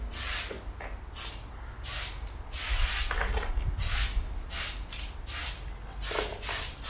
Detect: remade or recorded recorded